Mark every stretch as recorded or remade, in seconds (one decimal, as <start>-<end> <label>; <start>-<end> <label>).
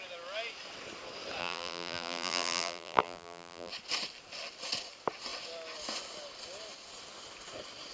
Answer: 0.0-1.4 recorded; 1.4-3.7 remade; 3.7-7.9 recorded